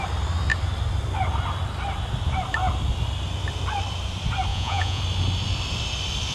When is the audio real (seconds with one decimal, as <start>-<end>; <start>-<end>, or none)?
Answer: 0.0-4.5; 5.0-6.3